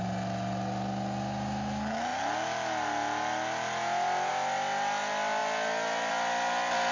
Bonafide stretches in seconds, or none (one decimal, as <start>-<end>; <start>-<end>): 0.0-6.9